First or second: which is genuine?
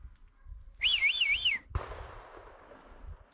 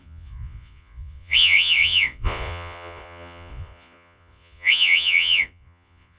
first